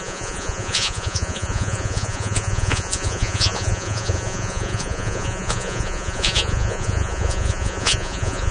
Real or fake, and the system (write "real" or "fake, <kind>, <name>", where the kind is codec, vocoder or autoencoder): fake, vocoder, Vocos